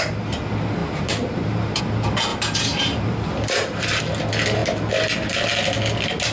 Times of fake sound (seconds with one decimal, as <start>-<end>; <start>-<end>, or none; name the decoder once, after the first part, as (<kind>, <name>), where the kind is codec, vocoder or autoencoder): 0.8-1.8 (vocoder, BigVGAN v2); 2.3-4.0